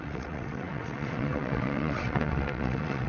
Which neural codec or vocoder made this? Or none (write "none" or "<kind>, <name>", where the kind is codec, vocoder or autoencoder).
vocoder, WaveNeXt